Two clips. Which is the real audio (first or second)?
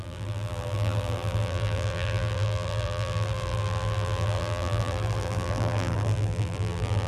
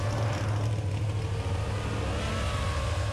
second